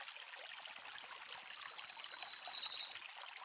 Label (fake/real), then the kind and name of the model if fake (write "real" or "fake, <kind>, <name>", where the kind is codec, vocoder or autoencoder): real